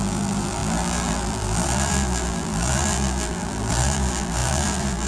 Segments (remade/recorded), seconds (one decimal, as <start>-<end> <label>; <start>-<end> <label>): 0.0-5.1 remade